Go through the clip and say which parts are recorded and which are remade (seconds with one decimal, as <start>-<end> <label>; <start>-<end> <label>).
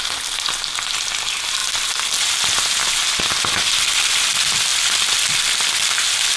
0.0-6.4 recorded